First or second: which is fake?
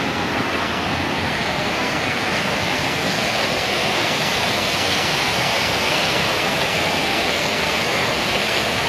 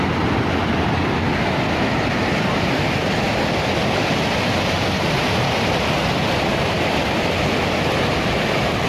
first